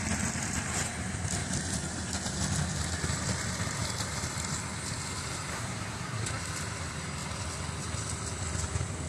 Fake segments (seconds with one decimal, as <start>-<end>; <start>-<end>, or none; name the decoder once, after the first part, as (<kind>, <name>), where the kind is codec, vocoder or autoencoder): 5.5-6.3 (codec, SNAC)